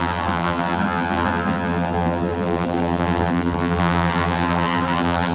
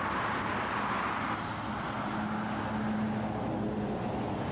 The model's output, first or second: first